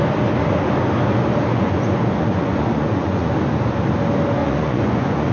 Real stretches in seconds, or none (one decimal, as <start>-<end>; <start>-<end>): 0.0-1.5; 3.3-4.4